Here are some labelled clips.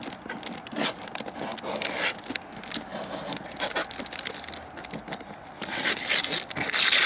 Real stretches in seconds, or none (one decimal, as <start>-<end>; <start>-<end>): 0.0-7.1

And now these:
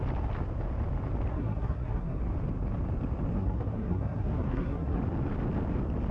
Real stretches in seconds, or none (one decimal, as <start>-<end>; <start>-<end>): 0.0-1.3; 2.2-3.3; 5.0-6.1

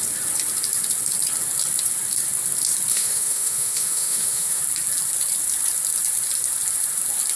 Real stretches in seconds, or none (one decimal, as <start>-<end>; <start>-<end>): 0.0-2.9; 4.6-7.4

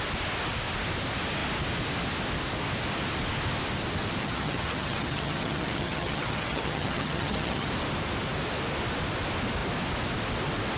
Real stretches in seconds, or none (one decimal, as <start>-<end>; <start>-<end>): 0.0-4.2; 7.7-10.8

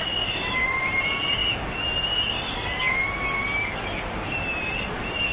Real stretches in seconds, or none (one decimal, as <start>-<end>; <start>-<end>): 1.4-4.6

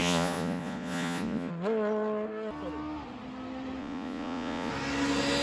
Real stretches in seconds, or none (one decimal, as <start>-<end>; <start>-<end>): 1.5-3.8; 4.7-5.4

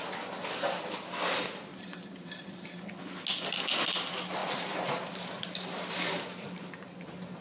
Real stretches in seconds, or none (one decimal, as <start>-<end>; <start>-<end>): 0.0-1.7; 2.8-4.4; 6.9-7.4

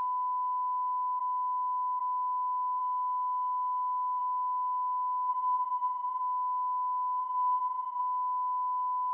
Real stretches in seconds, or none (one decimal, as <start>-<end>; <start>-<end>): 0.0-5.3; 6.2-7.2; 8.0-9.1